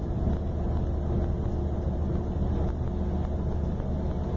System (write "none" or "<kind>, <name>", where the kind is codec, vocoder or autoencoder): none